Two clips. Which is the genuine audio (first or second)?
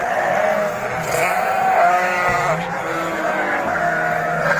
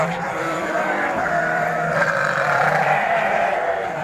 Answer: first